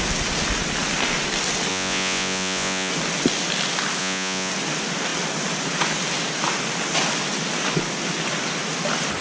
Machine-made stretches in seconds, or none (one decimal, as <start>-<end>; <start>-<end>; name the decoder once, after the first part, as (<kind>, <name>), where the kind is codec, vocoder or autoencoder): 1.7-2.9 (vocoder, Vocos); 4.0-4.5